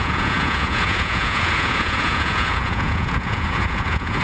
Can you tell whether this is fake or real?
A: fake